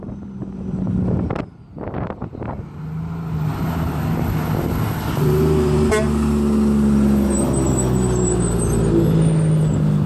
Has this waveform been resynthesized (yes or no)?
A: no